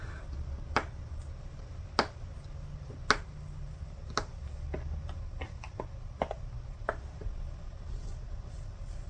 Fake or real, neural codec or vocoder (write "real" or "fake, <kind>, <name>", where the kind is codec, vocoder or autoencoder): real